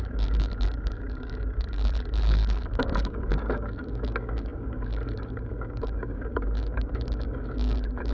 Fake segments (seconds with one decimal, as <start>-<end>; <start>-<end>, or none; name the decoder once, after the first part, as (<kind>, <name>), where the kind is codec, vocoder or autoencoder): 0.0-8.1 (codec, DAC)